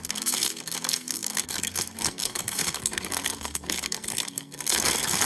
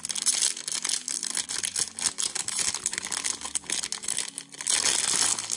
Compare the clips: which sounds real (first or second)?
second